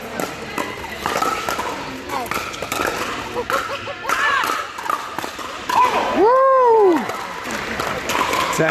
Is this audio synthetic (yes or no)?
no